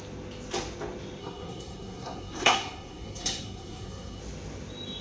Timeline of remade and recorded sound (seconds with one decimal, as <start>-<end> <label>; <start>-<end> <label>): 0.0-1.2 recorded; 1.2-4.2 remade; 4.2-5.0 recorded